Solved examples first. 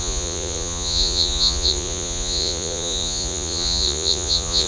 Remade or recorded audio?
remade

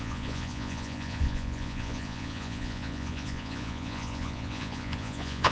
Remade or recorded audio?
remade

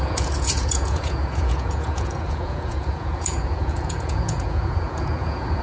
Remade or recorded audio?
remade